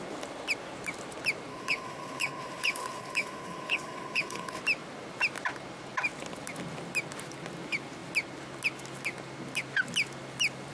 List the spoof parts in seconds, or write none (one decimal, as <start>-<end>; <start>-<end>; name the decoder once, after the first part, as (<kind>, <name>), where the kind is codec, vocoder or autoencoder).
1.5-4.6 (codec, HILCodec)